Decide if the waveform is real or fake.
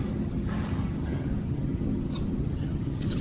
fake